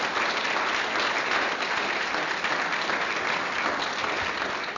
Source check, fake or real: real